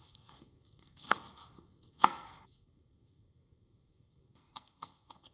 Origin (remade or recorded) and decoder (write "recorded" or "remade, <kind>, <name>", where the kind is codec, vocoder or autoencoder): remade, codec, SNAC